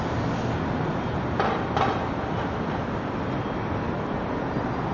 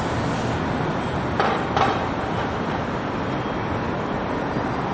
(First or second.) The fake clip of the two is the second